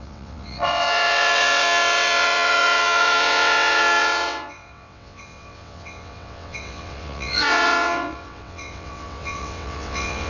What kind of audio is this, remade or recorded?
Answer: remade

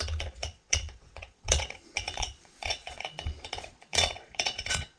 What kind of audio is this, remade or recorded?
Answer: remade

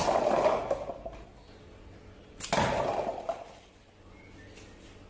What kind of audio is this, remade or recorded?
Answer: recorded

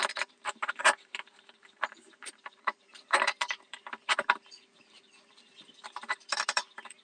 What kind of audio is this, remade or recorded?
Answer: remade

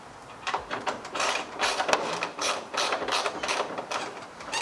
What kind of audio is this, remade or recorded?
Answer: remade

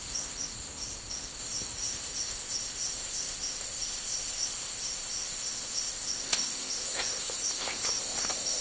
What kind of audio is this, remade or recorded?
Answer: remade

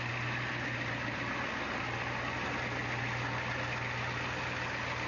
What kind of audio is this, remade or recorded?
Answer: recorded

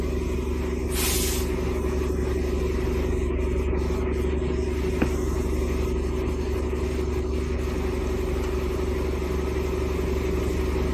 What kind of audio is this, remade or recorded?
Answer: recorded